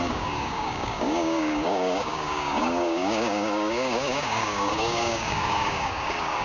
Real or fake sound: fake